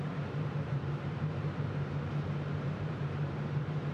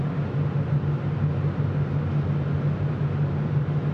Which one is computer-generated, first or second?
first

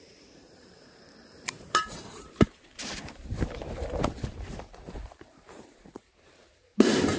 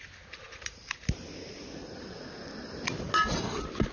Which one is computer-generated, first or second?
first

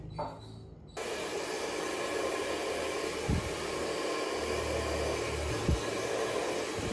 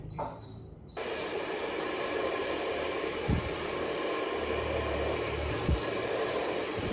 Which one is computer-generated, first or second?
second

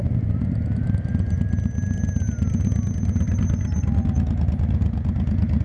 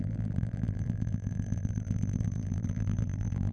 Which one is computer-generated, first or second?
second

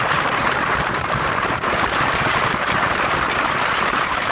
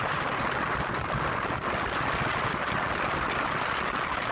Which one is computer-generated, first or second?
first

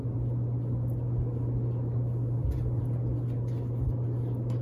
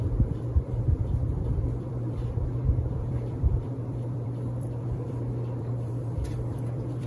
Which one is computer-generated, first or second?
second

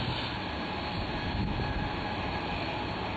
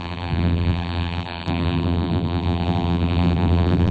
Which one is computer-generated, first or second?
second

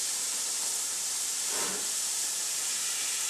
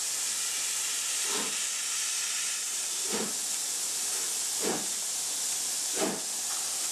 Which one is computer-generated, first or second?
first